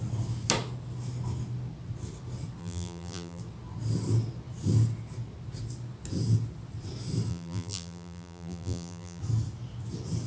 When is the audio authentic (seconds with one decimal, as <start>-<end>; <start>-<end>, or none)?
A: 0.0-2.6; 3.4-7.3; 9.2-10.3